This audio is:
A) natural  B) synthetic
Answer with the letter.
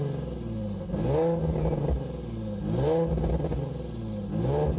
A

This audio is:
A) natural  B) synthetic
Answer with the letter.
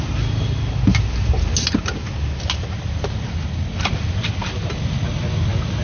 A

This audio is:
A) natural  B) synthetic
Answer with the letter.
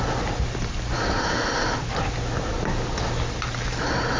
A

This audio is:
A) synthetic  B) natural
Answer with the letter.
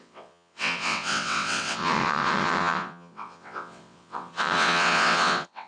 A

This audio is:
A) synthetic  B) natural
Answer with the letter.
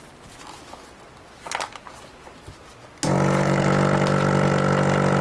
B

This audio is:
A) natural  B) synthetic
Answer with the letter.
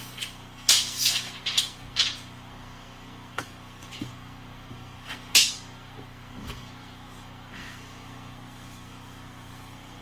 B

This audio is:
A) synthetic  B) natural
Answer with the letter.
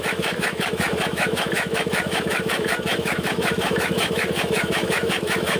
A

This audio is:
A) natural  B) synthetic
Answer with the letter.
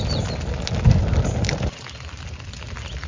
A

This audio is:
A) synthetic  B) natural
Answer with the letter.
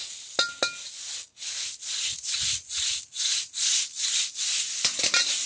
B